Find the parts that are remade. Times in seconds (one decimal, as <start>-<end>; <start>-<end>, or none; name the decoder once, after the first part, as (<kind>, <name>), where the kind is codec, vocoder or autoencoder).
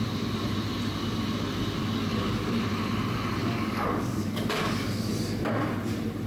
1.8-2.6 (codec, DAC); 3.4-5.1